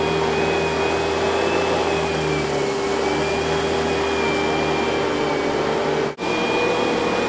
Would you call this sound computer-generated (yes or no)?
no